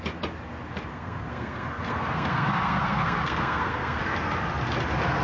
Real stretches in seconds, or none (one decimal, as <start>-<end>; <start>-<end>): 0.0-0.9; 4.0-5.2